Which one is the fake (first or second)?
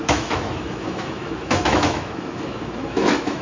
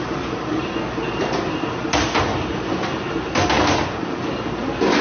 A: first